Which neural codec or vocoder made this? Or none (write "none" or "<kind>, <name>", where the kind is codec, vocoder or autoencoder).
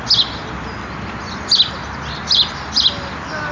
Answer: none